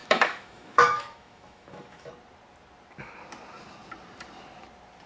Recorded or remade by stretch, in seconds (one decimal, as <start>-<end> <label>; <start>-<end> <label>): 0.0-2.1 remade; 2.1-5.1 recorded